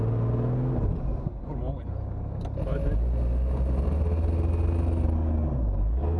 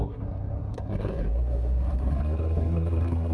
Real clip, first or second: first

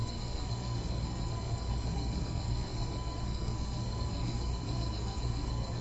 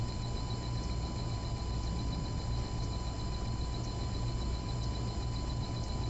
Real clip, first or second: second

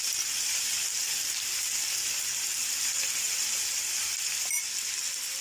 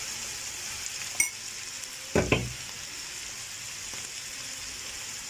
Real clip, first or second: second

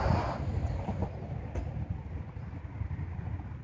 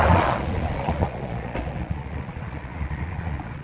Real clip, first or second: first